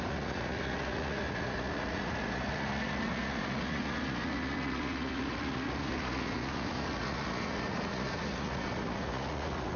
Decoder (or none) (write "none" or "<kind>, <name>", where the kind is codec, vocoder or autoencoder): vocoder, Vocos